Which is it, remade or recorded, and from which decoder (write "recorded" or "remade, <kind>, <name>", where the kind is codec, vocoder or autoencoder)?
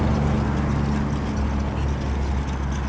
recorded